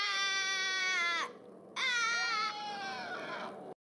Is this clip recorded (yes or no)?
no